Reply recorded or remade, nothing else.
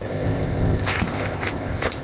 remade